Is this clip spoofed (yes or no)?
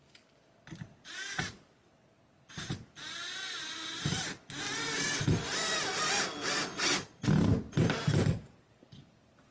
no